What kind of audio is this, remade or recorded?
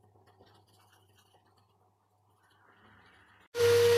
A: recorded